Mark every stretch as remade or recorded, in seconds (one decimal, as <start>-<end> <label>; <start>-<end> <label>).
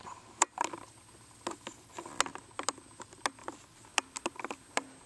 0.0-5.1 recorded